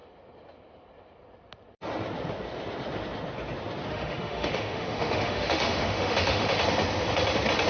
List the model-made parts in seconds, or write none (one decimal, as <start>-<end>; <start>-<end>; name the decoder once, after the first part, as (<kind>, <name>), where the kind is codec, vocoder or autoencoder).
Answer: 3.9-6.6 (autoencoder, DAC-VAE)